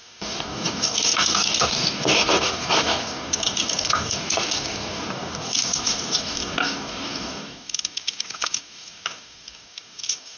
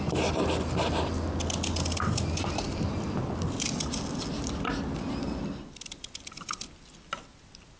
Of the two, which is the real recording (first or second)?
second